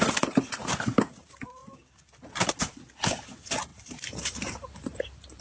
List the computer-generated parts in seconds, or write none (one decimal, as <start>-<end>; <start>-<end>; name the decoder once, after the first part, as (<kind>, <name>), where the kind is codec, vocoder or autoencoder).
0.0-1.6 (vocoder, BigVGAN v2); 2.7-5.4